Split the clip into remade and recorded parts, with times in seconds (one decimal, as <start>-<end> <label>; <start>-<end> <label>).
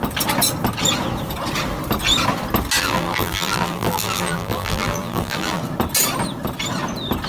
0.0-2.8 recorded; 2.8-5.6 remade; 5.6-7.3 recorded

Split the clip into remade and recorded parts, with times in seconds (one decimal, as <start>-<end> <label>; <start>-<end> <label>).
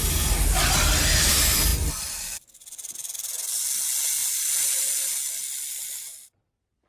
0.0-1.7 recorded; 1.7-2.4 remade; 2.4-6.9 recorded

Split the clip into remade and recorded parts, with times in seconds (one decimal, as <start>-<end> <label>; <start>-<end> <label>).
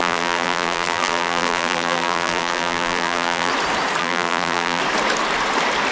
0.0-3.5 remade; 3.5-4.0 recorded; 4.0-4.8 remade; 4.8-5.9 recorded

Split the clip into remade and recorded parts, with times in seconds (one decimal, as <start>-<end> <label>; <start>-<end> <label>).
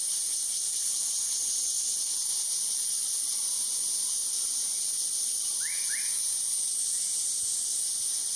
0.0-8.4 recorded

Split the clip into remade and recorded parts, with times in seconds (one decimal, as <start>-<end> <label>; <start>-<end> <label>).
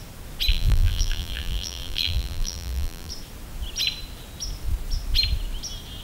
0.0-0.5 recorded; 0.5-3.1 remade; 3.1-6.0 recorded